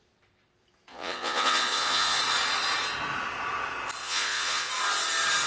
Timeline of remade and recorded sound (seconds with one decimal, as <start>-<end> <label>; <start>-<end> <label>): 0.0-0.9 recorded; 0.9-2.2 remade; 2.2-4.0 recorded; 4.0-4.7 remade; 4.7-5.5 recorded